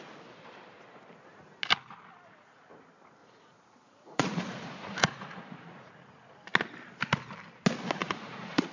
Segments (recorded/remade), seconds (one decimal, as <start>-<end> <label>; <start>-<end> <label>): 0.0-3.2 recorded; 3.2-5.9 remade; 5.9-8.0 recorded; 8.0-8.7 remade